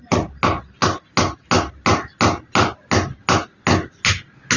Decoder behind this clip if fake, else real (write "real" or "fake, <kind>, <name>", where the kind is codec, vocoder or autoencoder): real